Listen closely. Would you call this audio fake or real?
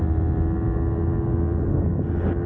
real